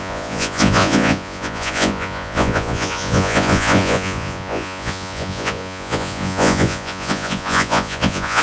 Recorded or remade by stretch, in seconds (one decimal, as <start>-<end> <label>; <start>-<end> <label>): 0.0-8.4 remade